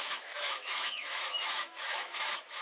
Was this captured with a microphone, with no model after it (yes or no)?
no